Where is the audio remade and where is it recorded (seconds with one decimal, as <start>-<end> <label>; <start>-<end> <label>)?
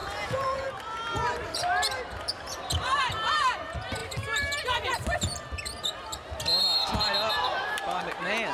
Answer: 0.0-0.7 remade; 0.7-8.5 recorded